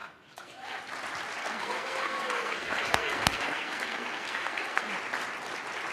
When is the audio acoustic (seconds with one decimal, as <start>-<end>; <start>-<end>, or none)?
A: 0.8-1.4; 4.9-5.9